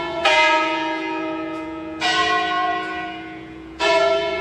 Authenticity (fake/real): fake